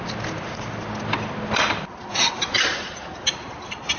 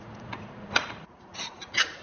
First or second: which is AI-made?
second